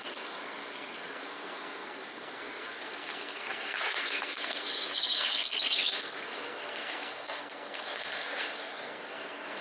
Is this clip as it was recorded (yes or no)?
no